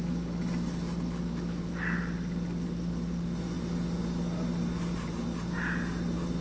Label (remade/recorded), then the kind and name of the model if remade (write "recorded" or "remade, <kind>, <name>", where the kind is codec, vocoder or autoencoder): recorded